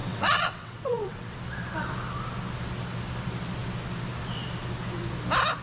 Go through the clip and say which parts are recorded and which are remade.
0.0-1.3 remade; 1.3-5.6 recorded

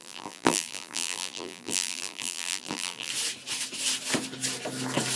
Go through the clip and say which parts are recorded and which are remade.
0.0-3.1 remade; 3.1-5.2 recorded